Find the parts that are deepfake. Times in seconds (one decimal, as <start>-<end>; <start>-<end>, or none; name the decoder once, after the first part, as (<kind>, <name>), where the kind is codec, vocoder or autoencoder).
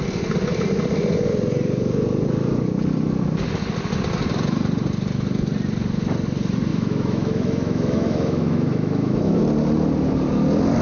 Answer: 6.7-9.4 (autoencoder, DAC-VAE)